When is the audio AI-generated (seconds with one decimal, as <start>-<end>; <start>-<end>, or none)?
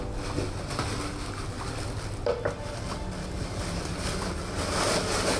1.1-4.3